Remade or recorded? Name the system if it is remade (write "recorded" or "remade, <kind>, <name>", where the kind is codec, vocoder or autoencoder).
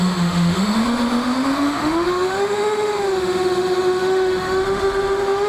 remade, autoencoder, DAC-VAE